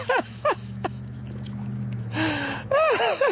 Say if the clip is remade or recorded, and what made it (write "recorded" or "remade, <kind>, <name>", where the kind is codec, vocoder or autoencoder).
remade, autoencoder, DAC-VAE